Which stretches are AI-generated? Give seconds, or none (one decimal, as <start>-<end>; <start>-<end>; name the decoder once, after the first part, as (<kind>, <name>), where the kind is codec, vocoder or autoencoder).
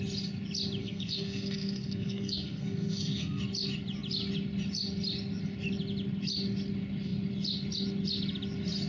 0.8-3.4 (codec, SNAC)